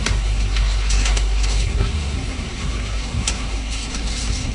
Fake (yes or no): yes